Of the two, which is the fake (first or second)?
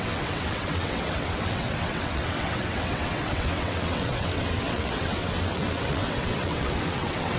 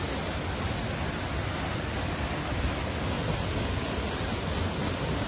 first